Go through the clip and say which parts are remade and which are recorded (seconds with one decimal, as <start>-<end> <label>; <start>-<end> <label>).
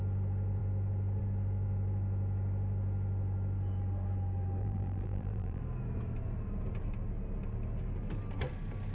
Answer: 0.0-4.6 recorded; 4.6-5.6 remade; 5.6-8.9 recorded